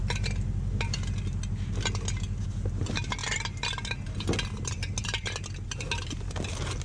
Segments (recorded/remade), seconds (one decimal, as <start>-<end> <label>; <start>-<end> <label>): 0.0-6.8 recorded